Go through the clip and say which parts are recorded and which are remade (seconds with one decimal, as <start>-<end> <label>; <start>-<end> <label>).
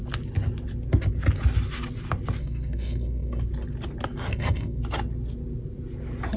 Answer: 0.0-2.4 recorded; 2.4-3.4 remade; 3.4-4.3 recorded; 4.3-4.8 remade; 4.8-6.4 recorded